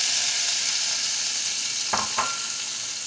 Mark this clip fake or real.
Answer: real